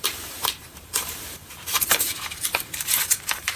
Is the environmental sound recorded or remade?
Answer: remade